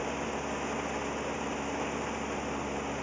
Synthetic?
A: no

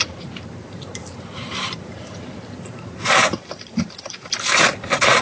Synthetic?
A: yes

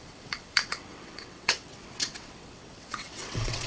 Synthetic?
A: yes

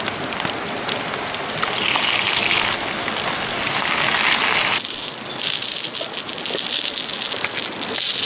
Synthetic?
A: no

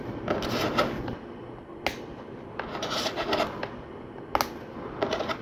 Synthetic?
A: no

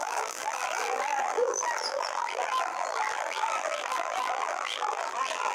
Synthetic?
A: yes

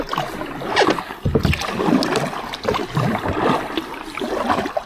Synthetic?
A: no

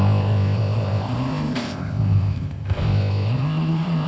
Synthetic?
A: yes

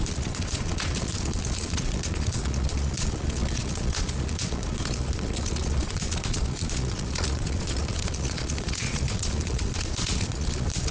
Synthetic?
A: yes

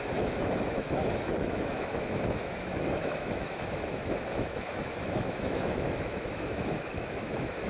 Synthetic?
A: yes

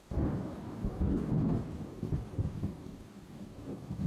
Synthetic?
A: yes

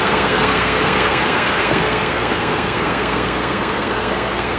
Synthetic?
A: yes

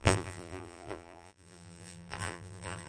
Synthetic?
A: yes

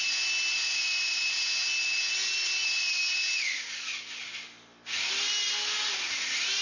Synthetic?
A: no